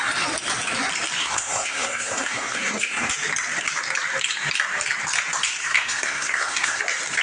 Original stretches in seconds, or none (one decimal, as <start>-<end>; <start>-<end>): 0.0-1.2; 3.1-5.6; 6.8-7.2